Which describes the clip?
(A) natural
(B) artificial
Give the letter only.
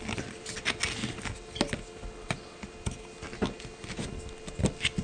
A